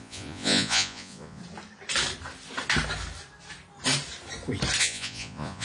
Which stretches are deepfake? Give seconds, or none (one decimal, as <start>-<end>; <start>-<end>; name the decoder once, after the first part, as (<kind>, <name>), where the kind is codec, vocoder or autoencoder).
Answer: 0.0-1.4 (vocoder, Vocos); 4.8-5.6